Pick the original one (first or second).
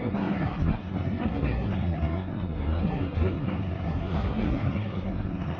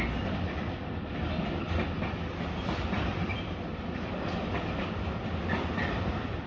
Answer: second